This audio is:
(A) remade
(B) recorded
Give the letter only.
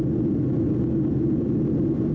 B